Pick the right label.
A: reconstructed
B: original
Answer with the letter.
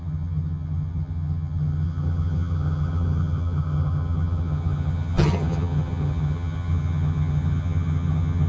A